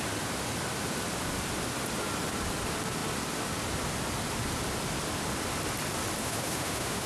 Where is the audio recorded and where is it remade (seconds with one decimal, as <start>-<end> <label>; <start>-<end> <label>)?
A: 0.0-6.2 recorded; 6.2-7.1 remade